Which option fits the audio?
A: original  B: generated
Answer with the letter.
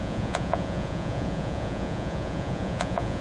B